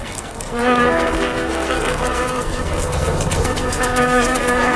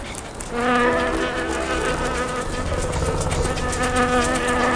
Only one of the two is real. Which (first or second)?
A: second